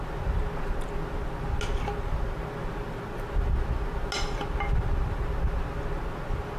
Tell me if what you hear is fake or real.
real